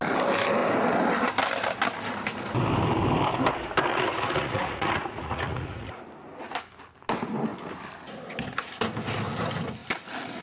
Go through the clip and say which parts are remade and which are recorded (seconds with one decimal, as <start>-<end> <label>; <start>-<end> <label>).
0.0-3.9 recorded; 3.9-6.0 remade; 6.0-10.4 recorded